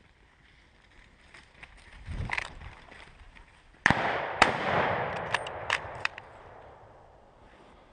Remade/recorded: remade